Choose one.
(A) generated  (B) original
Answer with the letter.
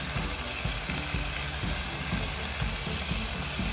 B